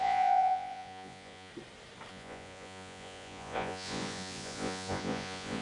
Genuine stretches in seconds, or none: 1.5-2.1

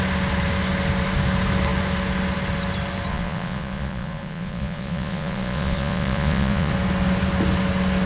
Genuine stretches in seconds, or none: 0.0-3.1; 6.7-8.1

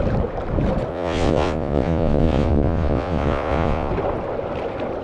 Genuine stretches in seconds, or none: 0.0-0.9; 3.9-5.0

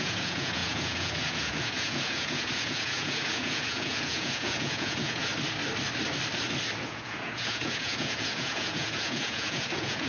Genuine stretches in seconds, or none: 5.3-6.8

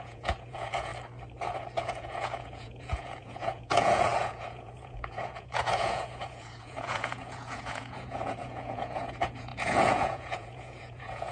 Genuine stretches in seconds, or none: 0.9-1.8

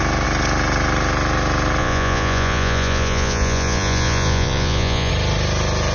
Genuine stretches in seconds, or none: 0.0-1.8; 5.1-5.9

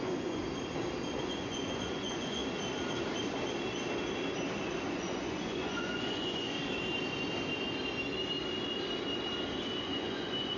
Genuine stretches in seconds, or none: 0.4-1.2; 2.4-4.9; 6.6-9.8